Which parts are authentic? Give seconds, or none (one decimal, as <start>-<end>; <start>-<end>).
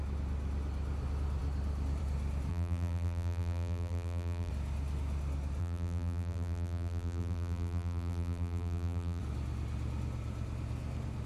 0.0-2.5; 4.5-5.6; 9.2-11.3